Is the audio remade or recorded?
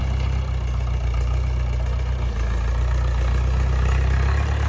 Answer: recorded